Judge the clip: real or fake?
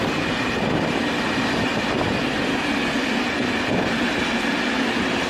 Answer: real